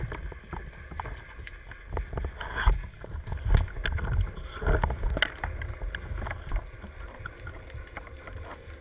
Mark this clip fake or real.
real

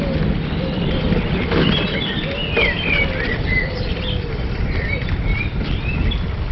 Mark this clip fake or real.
real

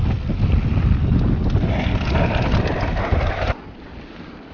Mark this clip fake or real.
real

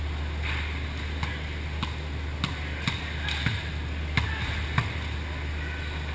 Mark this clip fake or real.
real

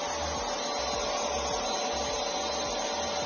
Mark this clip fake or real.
real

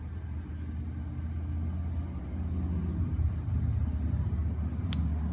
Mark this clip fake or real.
real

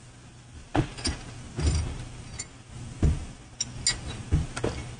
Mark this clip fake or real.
real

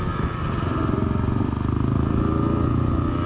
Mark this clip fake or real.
real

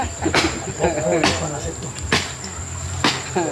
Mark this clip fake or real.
real